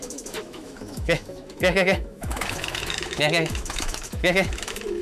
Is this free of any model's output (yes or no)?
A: no